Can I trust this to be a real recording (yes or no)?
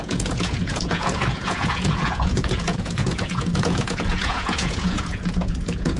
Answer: no